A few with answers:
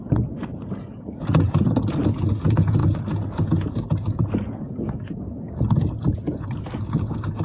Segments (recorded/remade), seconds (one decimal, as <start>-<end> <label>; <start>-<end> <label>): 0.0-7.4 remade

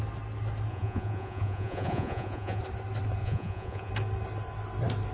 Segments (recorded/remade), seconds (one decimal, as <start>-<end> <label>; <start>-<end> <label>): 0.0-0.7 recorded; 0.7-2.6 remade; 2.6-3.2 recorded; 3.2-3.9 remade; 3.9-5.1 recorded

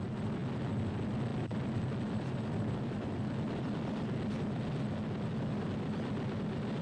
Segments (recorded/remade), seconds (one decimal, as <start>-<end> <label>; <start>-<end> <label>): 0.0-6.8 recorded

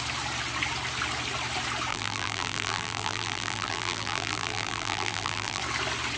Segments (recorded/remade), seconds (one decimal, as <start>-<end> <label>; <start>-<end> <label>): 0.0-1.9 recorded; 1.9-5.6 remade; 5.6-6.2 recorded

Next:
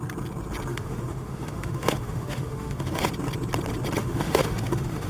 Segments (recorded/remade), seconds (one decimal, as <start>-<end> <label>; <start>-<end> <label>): 0.0-0.7 recorded; 0.7-3.1 remade; 3.1-4.0 recorded; 4.0-5.1 remade

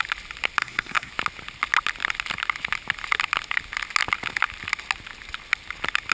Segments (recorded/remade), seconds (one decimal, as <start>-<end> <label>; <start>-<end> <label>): 0.0-0.6 recorded; 0.6-1.1 remade; 1.1-6.1 recorded